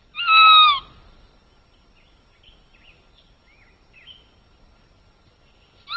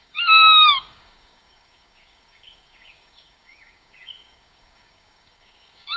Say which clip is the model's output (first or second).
second